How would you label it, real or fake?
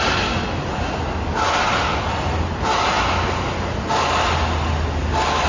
real